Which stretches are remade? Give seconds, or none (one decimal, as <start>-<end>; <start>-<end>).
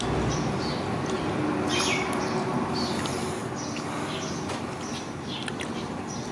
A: none